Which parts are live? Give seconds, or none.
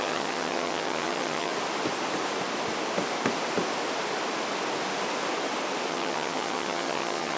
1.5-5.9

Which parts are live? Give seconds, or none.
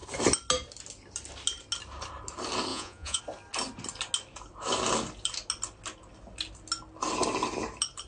0.0-2.7; 3.2-8.1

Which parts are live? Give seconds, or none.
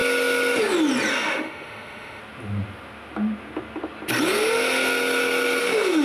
0.0-1.1; 2.2-5.6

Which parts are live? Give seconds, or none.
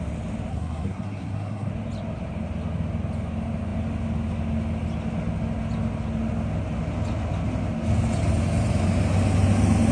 0.0-0.5; 1.7-9.9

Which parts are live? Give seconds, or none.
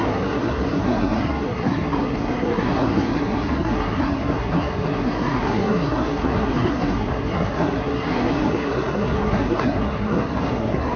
none